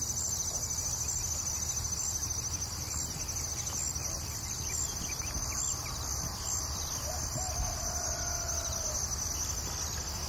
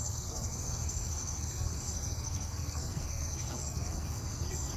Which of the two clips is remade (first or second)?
second